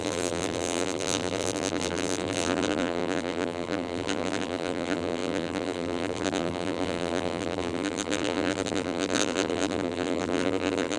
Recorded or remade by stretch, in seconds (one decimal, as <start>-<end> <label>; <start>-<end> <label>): 0.0-11.0 remade